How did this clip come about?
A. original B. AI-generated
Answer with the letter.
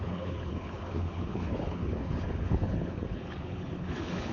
B